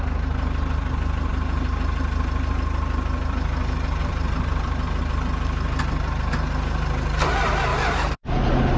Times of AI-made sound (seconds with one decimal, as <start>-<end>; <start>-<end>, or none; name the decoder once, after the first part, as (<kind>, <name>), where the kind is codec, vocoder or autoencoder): 4.0-5.0 (vocoder, BigVGAN v2); 7.7-8.3